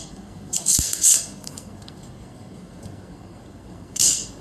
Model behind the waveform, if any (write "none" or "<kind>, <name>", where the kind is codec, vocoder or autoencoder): codec, SNAC